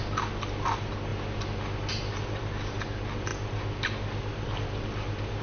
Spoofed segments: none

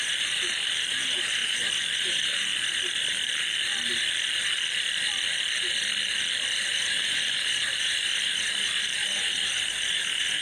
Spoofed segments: 0.0-2.5 (vocoder, BigVGAN v2); 6.7-10.4

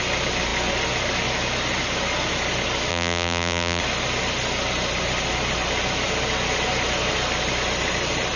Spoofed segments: 2.9-3.8 (vocoder, BigVGAN v2)

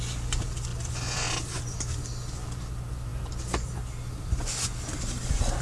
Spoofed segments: 0.0-0.7 (vocoder, BigVGAN v2); 2.0-3.1; 4.4-5.6

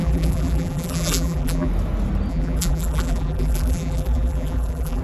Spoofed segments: 0.0-1.7 (vocoder, BigVGAN v2); 2.3-5.0

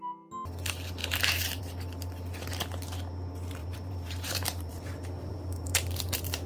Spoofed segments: 1.0-1.6 (vocoder, BigVGAN v2); 3.6-4.7; 5.3-6.5